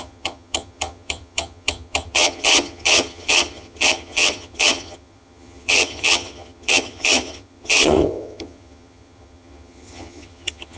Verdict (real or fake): fake